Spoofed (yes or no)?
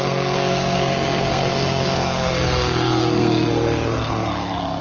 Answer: yes